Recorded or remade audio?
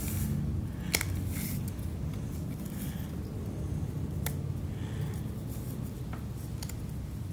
recorded